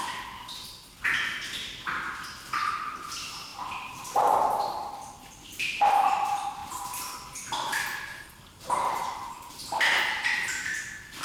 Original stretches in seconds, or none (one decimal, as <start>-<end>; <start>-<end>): 0.0-11.2